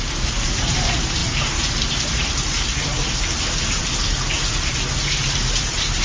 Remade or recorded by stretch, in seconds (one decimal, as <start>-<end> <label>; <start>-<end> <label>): 0.0-3.0 remade; 3.0-3.8 recorded; 3.8-6.0 remade